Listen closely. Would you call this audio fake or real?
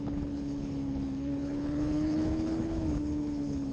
fake